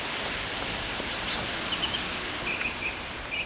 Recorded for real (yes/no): yes